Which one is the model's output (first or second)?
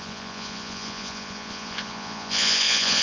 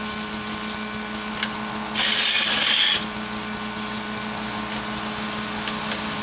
first